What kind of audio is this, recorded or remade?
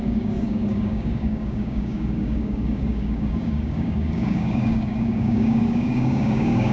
remade